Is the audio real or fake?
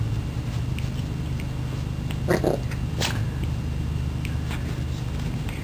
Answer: real